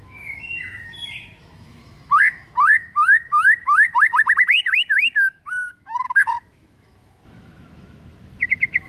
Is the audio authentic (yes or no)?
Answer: no